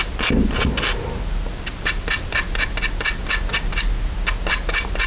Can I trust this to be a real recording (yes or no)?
yes